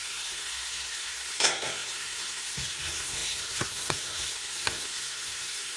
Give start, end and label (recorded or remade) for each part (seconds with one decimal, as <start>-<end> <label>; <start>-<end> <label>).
0.0-5.8 remade